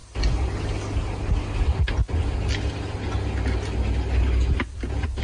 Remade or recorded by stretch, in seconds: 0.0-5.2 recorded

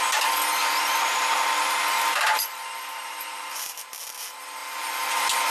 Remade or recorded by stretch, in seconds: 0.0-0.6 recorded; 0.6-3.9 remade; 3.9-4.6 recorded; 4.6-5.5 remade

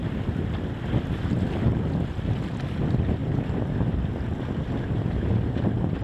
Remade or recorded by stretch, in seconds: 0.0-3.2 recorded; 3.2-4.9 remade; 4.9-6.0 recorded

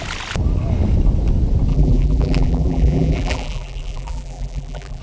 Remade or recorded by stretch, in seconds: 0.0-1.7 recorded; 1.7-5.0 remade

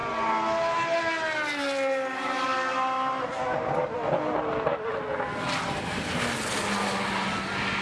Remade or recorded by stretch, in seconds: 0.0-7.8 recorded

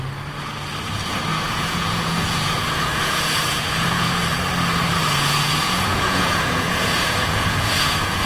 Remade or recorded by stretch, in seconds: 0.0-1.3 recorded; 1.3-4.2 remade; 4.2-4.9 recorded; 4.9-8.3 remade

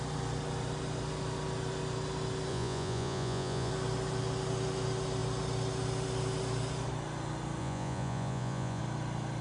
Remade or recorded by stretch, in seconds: 0.0-2.5 recorded; 2.5-3.7 remade; 3.7-7.6 recorded; 7.6-8.8 remade; 8.8-9.4 recorded